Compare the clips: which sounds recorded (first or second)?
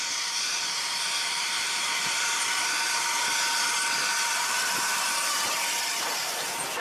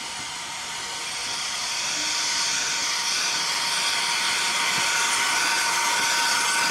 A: second